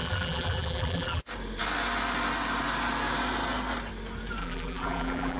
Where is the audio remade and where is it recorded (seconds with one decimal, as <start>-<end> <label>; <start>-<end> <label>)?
0.0-1.2 remade; 1.2-4.4 recorded; 4.4-5.4 remade